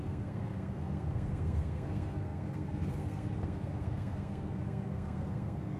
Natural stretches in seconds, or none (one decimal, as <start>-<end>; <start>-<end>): none